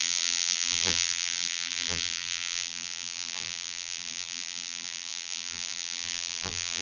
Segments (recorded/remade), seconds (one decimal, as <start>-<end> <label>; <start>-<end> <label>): 0.0-6.8 remade